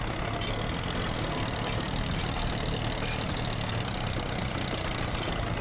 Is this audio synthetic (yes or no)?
no